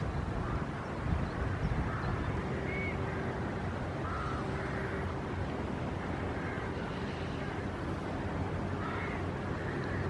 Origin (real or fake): real